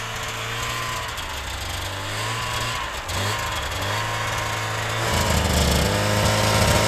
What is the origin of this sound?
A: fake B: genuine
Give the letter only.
B